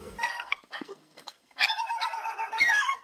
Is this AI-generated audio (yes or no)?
yes